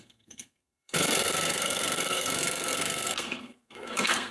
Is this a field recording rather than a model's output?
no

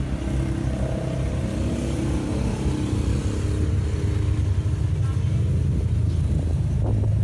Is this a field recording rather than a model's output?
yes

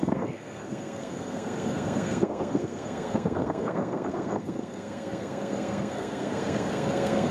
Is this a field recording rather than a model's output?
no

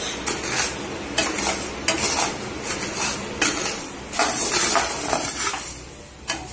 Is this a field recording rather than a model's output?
yes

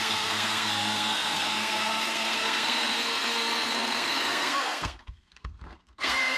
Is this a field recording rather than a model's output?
no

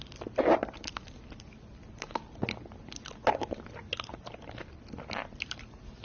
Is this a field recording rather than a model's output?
yes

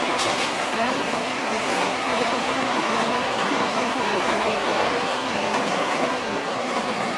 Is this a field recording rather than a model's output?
no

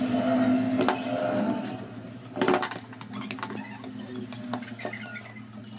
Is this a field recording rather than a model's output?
yes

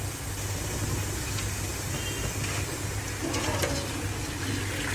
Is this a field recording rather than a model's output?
yes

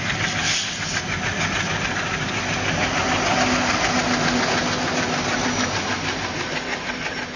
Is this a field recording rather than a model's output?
yes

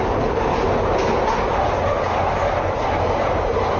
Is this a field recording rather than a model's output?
yes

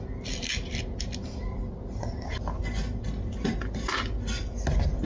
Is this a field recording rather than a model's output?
yes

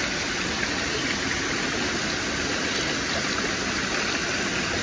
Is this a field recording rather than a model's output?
yes